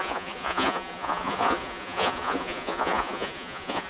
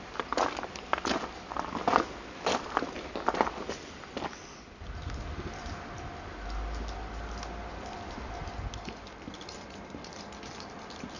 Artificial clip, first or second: first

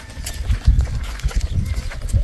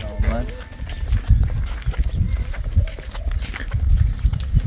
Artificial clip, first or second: first